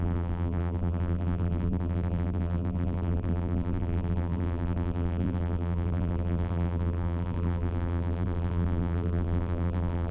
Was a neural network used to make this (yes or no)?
yes